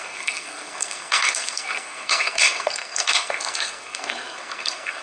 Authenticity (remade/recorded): remade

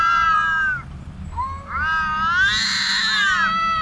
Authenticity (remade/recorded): recorded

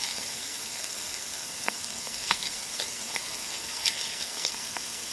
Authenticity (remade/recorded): remade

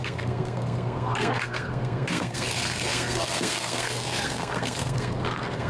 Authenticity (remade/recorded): remade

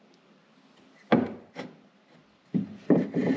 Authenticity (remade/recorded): recorded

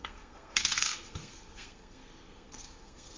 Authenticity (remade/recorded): remade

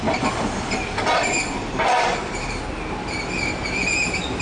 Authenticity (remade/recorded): recorded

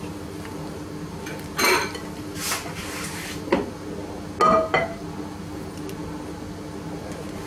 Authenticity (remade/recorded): recorded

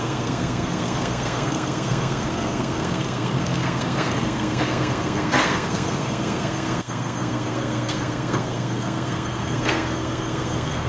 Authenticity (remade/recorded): remade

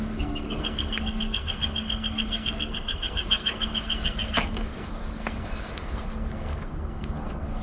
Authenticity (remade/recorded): remade